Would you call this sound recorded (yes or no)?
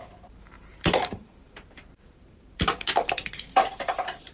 no